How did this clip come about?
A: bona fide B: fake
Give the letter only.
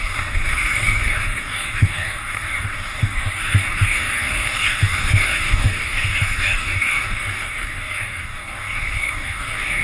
B